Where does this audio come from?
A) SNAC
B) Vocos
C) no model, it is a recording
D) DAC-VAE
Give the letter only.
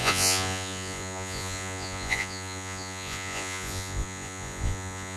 B